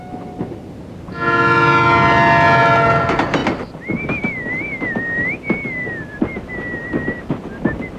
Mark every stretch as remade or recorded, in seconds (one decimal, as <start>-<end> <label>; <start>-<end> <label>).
0.0-8.0 recorded